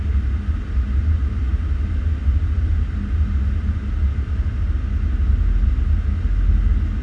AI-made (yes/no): no